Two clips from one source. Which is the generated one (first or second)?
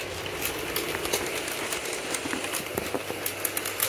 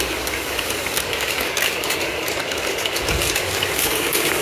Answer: second